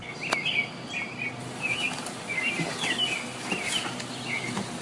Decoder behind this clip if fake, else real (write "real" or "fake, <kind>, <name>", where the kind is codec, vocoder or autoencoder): real